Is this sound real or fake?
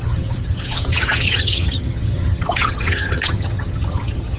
fake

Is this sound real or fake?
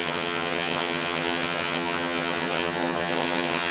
fake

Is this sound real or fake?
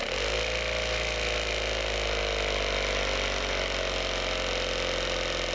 real